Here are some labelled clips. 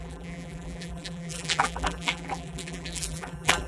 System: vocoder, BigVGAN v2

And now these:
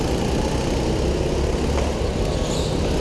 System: none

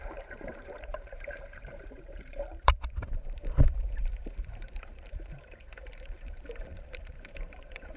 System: vocoder, BigVGAN v2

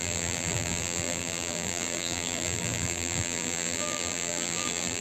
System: vocoder, BigVGAN v2